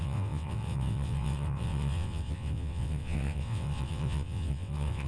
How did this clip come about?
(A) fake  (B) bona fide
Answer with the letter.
A